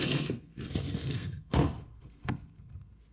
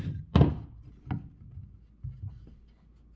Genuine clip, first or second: second